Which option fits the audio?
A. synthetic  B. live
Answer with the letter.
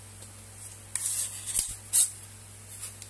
B